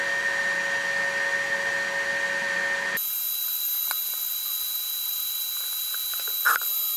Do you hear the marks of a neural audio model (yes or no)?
no